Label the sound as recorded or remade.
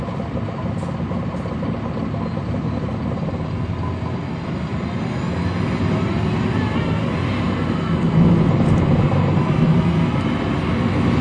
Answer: recorded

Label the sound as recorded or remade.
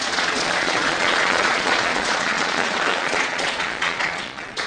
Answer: remade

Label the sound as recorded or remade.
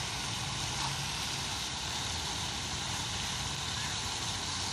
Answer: recorded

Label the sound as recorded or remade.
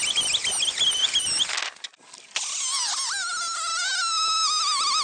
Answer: recorded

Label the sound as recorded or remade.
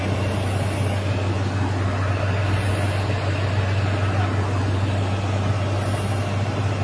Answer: recorded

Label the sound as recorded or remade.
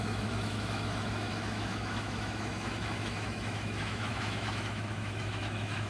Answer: remade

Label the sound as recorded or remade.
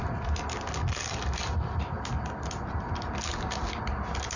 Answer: recorded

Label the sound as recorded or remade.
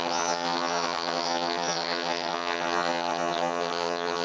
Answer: remade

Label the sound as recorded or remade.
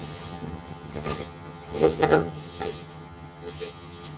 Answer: remade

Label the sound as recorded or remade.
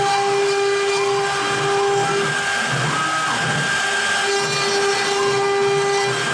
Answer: recorded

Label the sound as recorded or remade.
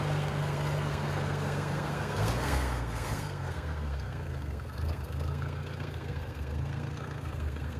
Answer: remade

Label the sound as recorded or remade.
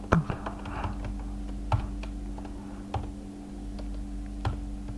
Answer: recorded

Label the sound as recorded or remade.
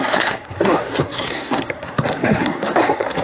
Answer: remade